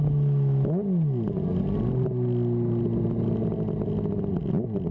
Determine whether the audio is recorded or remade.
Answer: recorded